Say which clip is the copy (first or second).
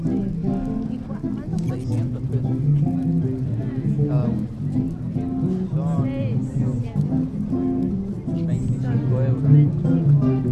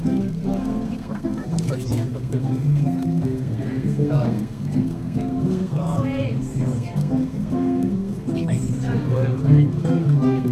second